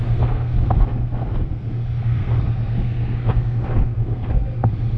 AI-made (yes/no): yes